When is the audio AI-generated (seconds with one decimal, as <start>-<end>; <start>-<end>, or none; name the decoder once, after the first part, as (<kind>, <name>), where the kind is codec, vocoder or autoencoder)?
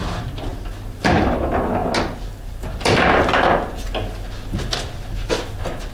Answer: none